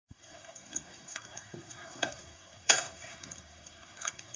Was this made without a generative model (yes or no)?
no